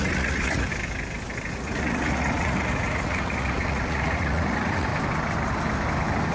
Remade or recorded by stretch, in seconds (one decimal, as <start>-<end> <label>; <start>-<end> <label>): 0.0-0.7 remade; 0.7-1.5 recorded; 1.5-4.9 remade; 4.9-6.3 recorded